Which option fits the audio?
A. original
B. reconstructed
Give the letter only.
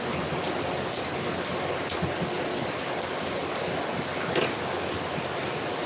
A